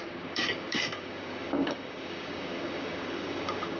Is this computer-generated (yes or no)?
yes